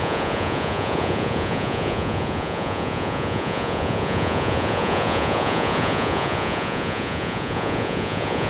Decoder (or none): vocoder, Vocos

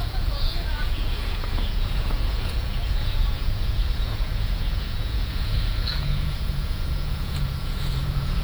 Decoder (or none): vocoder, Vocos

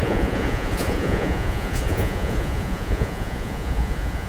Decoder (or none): vocoder, Vocos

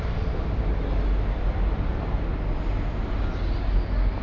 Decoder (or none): none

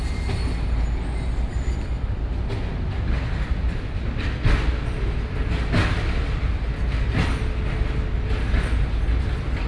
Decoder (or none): none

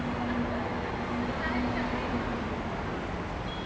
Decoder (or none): none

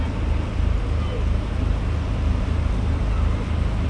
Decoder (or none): none